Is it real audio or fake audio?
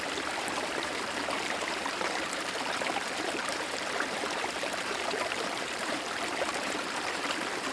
fake